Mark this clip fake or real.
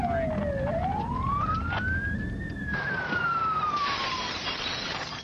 real